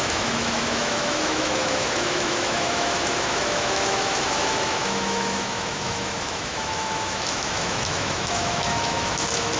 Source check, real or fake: fake